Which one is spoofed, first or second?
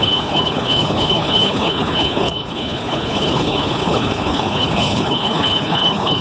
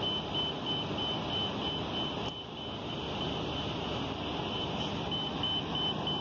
first